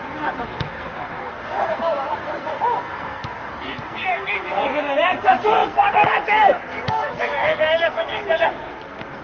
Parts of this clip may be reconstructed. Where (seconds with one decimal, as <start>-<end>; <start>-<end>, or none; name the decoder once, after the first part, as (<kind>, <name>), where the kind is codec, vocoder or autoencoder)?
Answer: 0.0-9.2 (codec, SNAC)